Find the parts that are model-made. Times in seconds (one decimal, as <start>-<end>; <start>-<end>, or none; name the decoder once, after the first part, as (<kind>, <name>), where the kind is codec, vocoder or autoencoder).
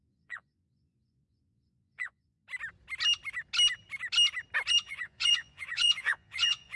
0.0-2.4 (vocoder, Vocos); 4.7-6.8